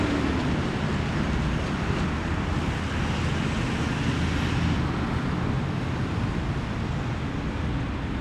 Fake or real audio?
real